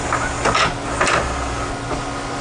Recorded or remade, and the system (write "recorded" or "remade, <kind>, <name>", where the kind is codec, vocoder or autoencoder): recorded